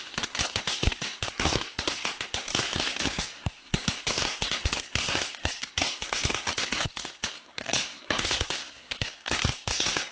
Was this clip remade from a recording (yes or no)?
yes